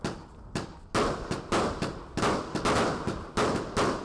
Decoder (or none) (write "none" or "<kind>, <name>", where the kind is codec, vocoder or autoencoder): none